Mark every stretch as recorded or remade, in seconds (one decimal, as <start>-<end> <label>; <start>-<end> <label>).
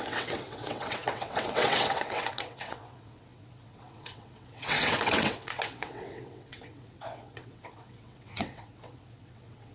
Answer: 0.0-9.7 remade